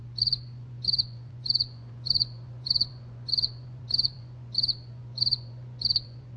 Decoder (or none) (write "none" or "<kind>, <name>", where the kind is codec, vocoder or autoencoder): vocoder, Vocos